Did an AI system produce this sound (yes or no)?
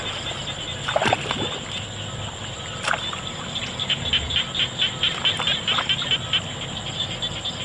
no